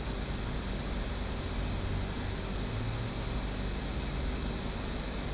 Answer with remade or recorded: recorded